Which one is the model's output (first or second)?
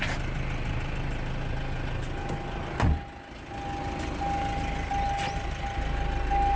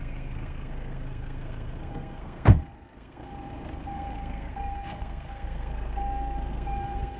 second